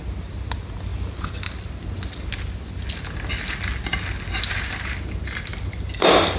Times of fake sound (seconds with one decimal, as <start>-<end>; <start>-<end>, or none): none